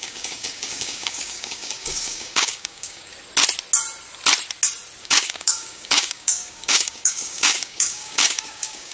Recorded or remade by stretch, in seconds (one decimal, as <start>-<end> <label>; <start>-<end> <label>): 0.0-3.1 remade; 3.1-5.0 recorded; 5.0-8.9 remade